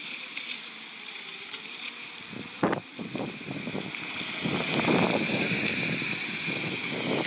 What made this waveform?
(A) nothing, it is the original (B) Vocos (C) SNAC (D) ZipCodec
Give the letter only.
A